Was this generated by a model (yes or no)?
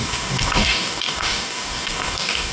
yes